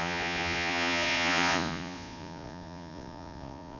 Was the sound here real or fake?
fake